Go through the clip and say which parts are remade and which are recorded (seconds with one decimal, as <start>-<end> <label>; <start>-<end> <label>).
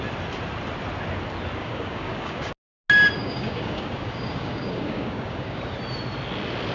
0.0-1.6 recorded; 1.6-2.5 remade; 2.5-3.2 recorded; 3.2-5.6 remade; 5.6-6.7 recorded